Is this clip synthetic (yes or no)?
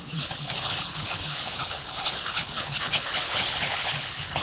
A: yes